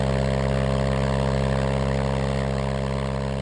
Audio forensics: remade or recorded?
recorded